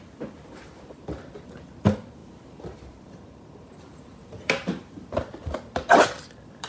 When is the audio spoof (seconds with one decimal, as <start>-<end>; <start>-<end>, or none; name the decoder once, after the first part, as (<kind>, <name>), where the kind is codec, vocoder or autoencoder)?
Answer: 0.0-6.7 (vocoder, BigVGAN v2)